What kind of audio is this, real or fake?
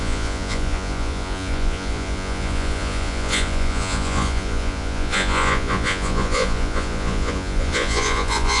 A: fake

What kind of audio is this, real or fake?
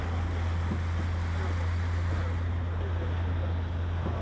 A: real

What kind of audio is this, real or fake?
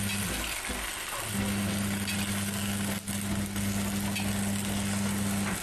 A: real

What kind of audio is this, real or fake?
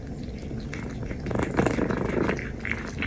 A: real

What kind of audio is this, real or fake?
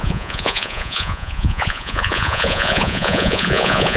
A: fake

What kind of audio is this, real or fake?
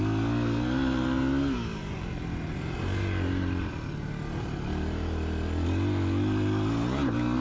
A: real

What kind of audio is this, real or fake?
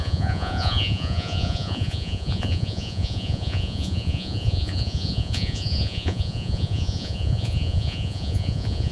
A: fake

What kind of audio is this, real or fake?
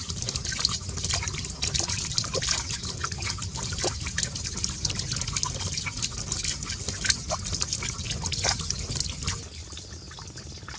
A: real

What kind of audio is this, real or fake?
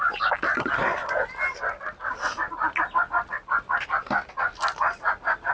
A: real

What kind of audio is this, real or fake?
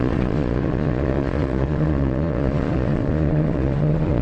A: fake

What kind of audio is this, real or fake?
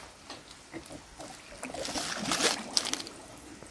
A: real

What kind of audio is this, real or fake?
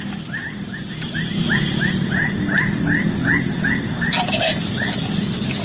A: real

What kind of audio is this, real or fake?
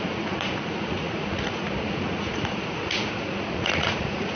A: fake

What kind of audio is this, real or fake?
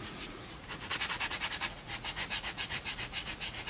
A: fake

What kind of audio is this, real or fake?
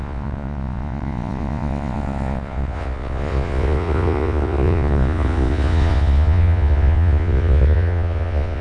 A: fake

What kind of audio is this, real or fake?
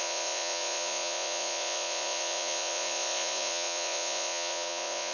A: fake